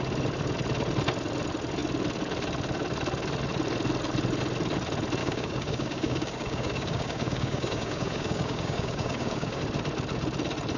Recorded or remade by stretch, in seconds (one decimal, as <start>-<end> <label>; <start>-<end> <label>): 0.0-5.2 recorded; 5.2-9.6 remade; 9.6-10.8 recorded